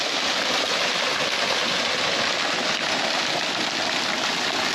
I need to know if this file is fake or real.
real